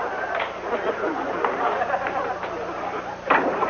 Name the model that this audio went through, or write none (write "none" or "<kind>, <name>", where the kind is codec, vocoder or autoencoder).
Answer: none